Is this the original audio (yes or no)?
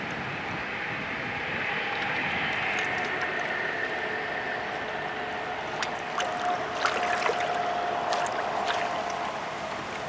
yes